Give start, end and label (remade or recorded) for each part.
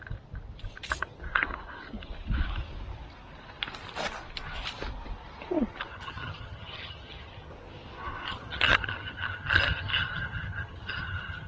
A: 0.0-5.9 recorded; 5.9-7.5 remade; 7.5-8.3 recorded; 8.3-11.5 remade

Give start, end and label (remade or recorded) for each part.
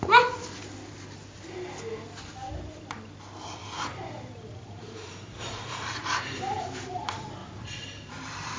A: 0.0-3.6 recorded; 3.6-7.0 remade; 7.0-7.4 recorded; 7.4-8.6 remade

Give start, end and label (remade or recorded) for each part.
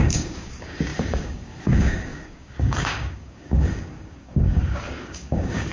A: 0.0-5.7 remade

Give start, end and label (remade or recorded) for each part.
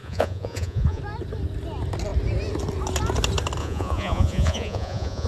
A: 0.0-1.0 remade; 1.0-3.6 recorded; 3.6-5.3 remade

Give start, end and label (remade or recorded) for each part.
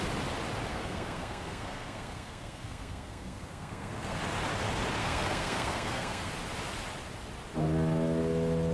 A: 0.0-0.7 recorded; 0.7-4.2 remade; 4.2-5.0 recorded; 5.0-6.3 remade; 6.3-8.7 recorded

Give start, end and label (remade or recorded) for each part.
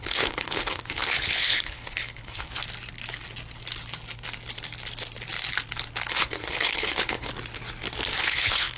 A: 0.0-2.6 remade; 2.6-6.1 recorded; 6.1-7.3 remade; 7.3-8.2 recorded; 8.2-8.8 remade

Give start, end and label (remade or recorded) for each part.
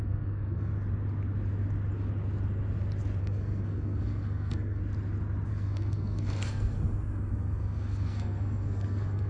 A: 0.0-0.7 remade; 0.7-3.2 recorded; 3.2-4.8 remade; 4.8-5.5 recorded; 5.5-9.3 remade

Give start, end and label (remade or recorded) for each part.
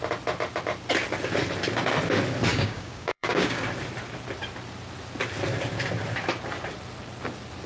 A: 0.0-2.5 recorded; 2.5-3.6 remade; 3.6-7.7 recorded